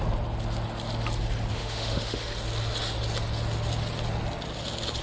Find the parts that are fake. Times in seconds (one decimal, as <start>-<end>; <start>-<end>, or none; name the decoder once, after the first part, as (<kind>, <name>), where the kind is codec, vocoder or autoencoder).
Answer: 1.5-2.2 (autoencoder, DAC-VAE)